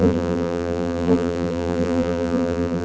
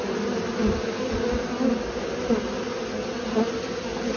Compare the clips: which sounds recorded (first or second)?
second